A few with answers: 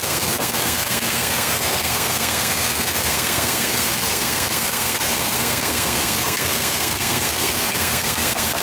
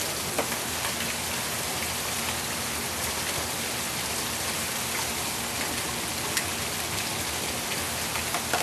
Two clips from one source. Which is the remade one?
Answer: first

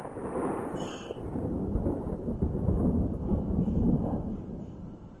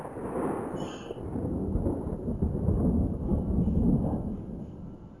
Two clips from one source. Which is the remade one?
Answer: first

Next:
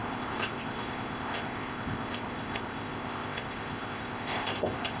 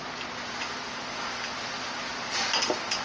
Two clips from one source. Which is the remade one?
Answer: first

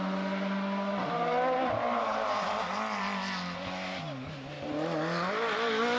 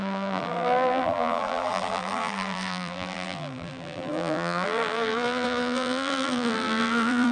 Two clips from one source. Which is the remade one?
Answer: second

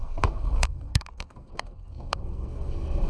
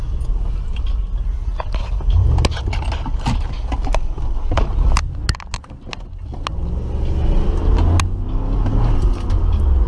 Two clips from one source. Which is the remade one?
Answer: first